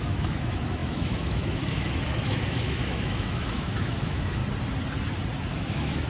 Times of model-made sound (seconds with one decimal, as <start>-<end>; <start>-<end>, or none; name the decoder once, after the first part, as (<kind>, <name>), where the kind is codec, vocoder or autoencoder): 0.0-4.4 (autoencoder, DAC-VAE); 5.5-6.1